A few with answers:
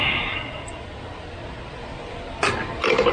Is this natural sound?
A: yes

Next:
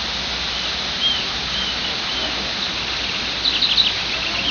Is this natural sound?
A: yes